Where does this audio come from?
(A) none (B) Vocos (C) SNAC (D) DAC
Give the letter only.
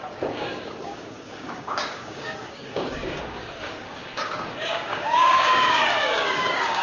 D